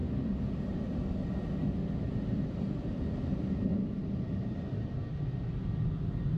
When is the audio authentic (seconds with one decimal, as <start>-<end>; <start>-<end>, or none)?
1.0-6.4